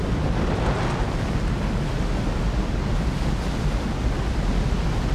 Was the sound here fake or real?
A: real